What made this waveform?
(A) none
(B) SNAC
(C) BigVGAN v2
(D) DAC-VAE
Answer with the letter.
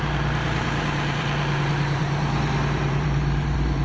C